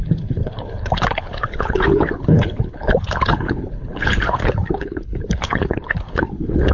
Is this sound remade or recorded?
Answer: remade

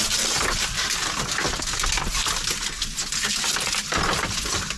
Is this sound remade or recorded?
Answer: recorded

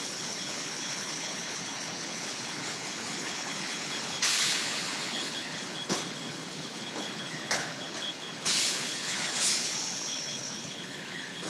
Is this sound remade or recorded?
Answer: remade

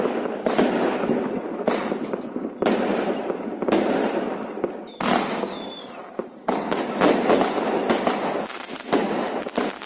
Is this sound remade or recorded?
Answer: recorded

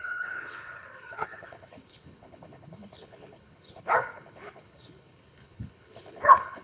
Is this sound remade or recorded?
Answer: remade